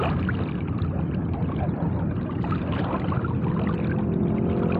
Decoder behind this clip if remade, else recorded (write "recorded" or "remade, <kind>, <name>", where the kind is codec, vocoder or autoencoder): recorded